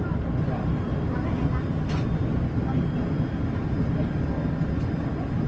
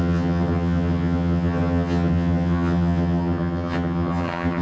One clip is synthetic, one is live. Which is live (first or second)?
first